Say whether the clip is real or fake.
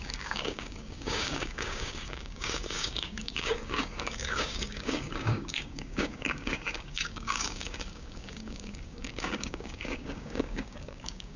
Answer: fake